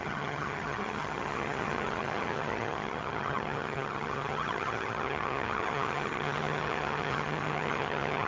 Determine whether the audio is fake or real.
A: fake